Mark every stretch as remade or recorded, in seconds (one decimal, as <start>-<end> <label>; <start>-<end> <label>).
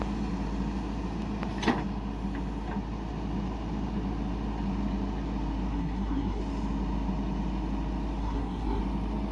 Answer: 0.0-5.7 recorded; 5.7-6.4 remade; 6.4-8.2 recorded; 8.2-8.8 remade; 8.8-9.3 recorded